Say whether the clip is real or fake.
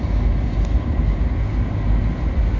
real